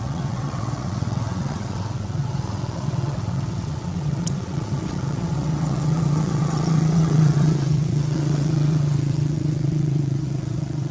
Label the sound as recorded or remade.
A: remade